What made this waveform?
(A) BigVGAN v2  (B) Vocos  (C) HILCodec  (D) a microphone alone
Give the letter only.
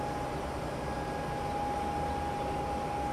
D